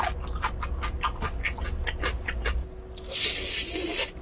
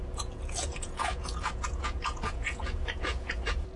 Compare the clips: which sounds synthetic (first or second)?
second